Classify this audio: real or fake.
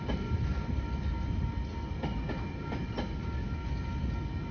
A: real